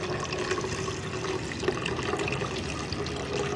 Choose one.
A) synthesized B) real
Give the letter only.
B